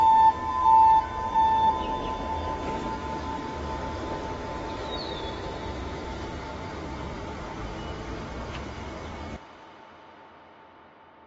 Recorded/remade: recorded